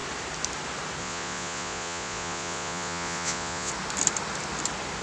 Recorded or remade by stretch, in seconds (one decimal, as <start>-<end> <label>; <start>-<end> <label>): 0.0-1.0 recorded; 1.0-3.7 remade; 3.7-5.0 recorded